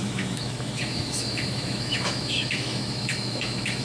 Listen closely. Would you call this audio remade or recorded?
remade